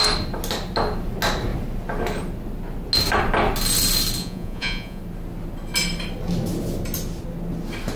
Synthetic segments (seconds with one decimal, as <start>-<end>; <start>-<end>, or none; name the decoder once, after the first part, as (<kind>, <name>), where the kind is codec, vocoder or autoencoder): 4.2-5.0 (vocoder, Vocos)